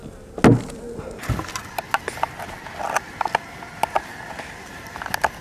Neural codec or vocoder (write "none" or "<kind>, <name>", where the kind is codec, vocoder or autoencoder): none